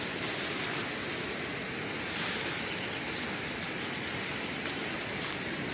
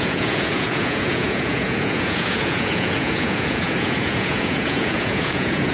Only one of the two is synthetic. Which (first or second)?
second